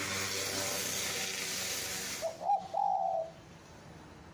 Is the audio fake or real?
real